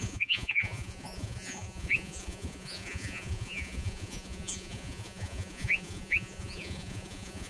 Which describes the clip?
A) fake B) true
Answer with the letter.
A